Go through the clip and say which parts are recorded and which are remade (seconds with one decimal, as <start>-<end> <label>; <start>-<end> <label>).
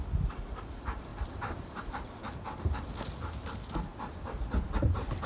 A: 0.0-5.3 recorded